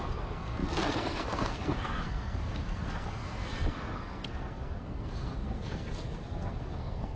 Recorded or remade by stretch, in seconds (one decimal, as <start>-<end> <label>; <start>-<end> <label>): 0.0-7.2 remade